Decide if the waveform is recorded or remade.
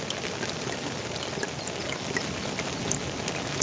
recorded